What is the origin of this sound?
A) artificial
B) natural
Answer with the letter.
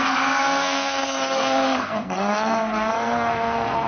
A